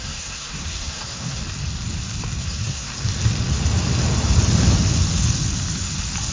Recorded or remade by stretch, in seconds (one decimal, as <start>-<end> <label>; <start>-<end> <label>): 0.0-1.4 remade; 1.4-2.4 recorded; 2.4-2.9 remade; 2.9-6.3 recorded